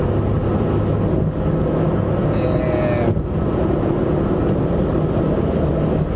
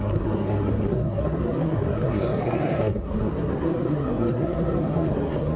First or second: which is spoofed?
second